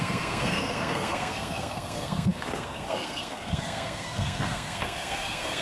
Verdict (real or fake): fake